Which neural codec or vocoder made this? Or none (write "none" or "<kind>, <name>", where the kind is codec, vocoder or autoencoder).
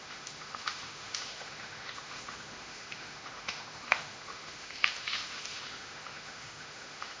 autoencoder, DAC-VAE